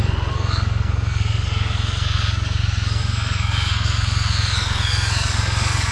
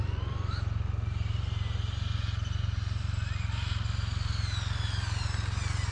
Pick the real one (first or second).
second